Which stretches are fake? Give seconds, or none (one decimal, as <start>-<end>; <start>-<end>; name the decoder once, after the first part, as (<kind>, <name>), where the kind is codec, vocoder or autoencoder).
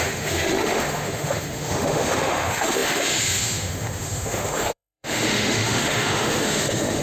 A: 0.0-7.0 (autoencoder, DAC-VAE)